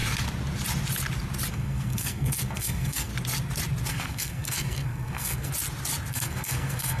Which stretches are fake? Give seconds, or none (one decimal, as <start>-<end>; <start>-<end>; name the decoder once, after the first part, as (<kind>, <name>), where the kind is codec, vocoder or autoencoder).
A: 1.5-3.1 (codec, SNAC); 3.9-5.5; 6.1-7.0